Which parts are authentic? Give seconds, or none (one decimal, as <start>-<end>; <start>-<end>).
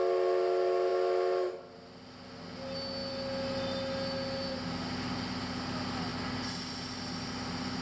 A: 0.0-7.8